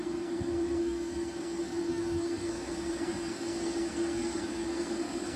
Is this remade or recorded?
remade